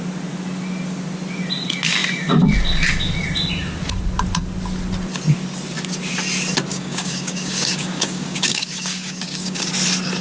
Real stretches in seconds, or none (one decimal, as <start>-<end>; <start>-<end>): 0.0-6.7; 9.7-10.2